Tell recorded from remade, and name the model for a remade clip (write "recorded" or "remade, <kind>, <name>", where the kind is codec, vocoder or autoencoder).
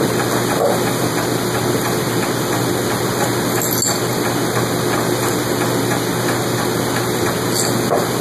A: recorded